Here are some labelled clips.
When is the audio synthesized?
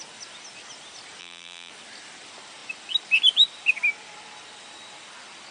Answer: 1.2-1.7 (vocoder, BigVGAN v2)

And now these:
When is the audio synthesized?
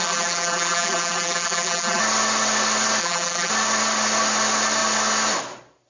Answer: 0.0-2.0 (vocoder, BigVGAN v2); 3.0-3.5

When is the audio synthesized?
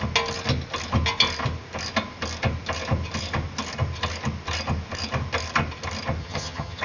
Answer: 6.2-6.8 (vocoder, HiFi-GAN)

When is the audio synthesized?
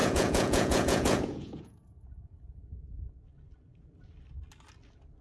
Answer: 0.0-3.0 (vocoder, Vocos)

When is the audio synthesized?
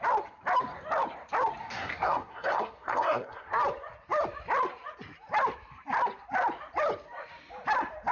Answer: 1.6-3.6 (codec, SNAC)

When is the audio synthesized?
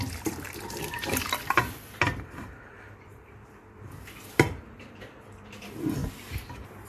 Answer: 0.0-6.0 (vocoder, BigVGAN v2)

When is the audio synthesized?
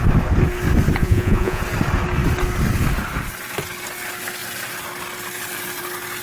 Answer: 1.0-1.6 (vocoder, Vocos)